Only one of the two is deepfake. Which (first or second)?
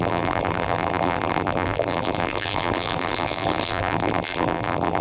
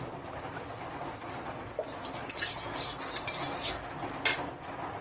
first